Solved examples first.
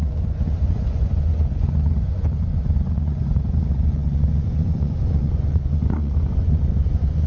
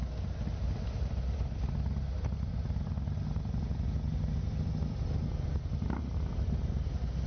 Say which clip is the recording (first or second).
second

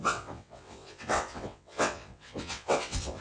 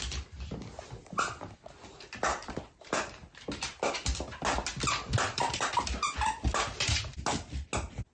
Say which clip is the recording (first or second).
second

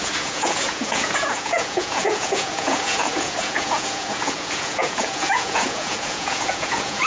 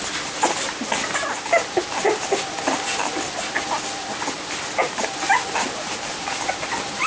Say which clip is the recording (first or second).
second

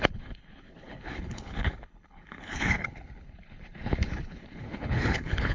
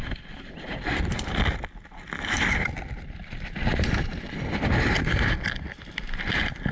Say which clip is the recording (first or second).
second